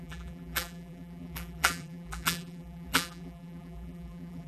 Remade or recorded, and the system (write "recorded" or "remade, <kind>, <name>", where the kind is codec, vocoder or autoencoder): remade, vocoder, BigVGAN v2